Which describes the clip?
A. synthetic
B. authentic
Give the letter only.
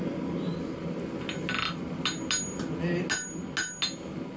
B